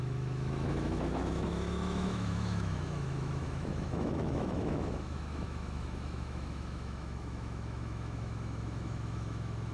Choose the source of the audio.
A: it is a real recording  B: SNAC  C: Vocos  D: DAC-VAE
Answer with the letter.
D